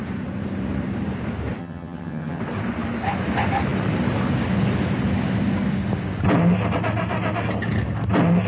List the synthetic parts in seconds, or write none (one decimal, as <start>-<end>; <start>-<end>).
1.6-2.4

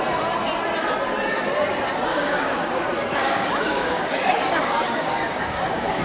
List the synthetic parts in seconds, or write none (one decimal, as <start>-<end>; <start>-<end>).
2.1-6.0

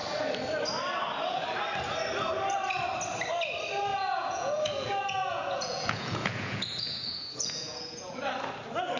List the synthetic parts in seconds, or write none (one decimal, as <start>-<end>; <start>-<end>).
3.9-8.2

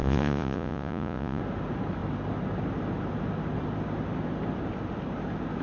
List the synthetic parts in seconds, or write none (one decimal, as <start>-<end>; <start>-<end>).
0.0-1.4

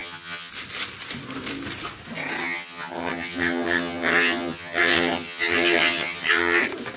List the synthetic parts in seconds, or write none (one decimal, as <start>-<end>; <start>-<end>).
0.0-0.5; 2.4-6.6

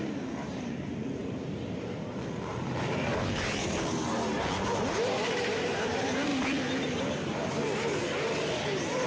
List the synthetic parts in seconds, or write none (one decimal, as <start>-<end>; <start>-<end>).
0.0-6.3; 7.0-9.1

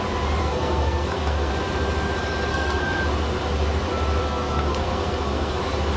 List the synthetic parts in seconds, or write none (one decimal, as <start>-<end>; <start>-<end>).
0.4-1.5; 2.5-3.0; 4.2-5.6